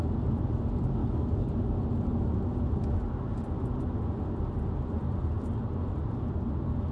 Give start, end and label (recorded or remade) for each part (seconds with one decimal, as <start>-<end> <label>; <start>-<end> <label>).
0.0-1.0 recorded; 1.0-1.5 remade; 1.5-6.9 recorded